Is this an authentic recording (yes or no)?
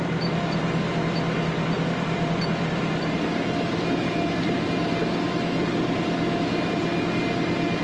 yes